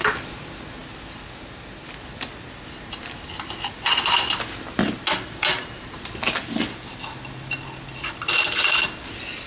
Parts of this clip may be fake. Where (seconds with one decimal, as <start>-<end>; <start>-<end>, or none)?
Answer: none